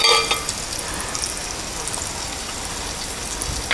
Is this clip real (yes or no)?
yes